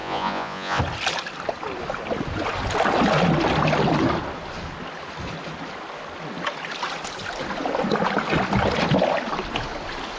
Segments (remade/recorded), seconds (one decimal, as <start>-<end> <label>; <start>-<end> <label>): 0.0-0.8 remade; 0.8-10.2 recorded